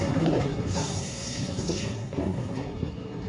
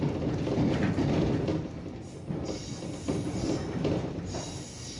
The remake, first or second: first